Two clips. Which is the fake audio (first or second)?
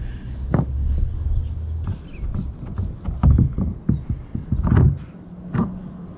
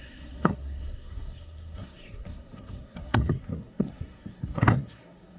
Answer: second